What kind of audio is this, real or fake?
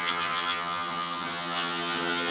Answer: fake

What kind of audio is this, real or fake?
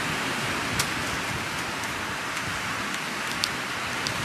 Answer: real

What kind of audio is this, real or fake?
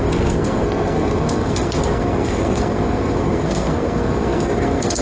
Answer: fake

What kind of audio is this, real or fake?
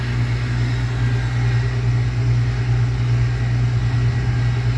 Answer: real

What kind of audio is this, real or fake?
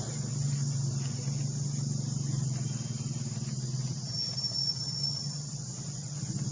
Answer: real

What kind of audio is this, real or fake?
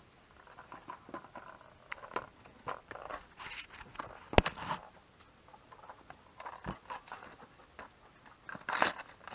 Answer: real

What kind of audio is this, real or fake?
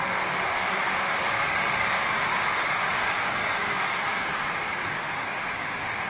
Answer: fake